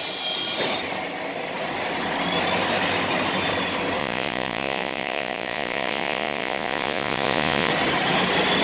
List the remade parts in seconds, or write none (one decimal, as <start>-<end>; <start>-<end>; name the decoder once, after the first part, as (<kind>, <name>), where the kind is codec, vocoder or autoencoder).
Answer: 4.0-7.7 (vocoder, Vocos)